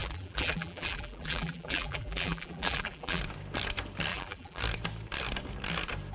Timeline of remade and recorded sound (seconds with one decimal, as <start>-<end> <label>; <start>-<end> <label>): 0.0-3.2 remade; 3.2-4.1 recorded; 4.1-4.6 remade; 4.6-6.1 recorded

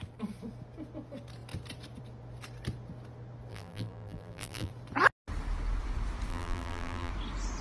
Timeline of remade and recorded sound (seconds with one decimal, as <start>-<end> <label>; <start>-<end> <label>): 0.0-3.5 recorded; 3.5-4.7 remade; 4.7-6.3 recorded; 6.3-7.1 remade; 7.1-7.6 recorded

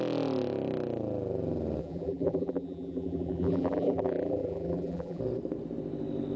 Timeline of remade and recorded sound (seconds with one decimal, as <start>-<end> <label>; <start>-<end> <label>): 0.0-1.8 recorded; 1.8-5.2 remade; 5.2-6.4 recorded

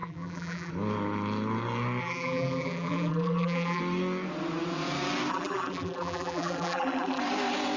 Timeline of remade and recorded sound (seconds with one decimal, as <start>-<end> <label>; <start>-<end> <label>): 0.0-0.7 remade; 0.7-2.0 recorded; 2.0-3.8 remade; 3.8-5.3 recorded; 5.3-7.2 remade; 7.2-7.8 recorded